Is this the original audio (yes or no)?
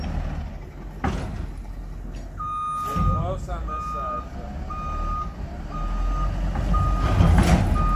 yes